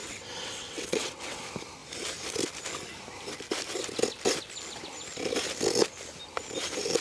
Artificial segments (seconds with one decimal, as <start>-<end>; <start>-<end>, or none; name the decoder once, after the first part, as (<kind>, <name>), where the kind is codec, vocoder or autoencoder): 0.0-1.4 (vocoder, WaveNeXt)